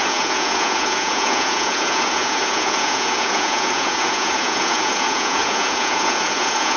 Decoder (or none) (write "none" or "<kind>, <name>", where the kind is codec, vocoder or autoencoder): vocoder, Vocos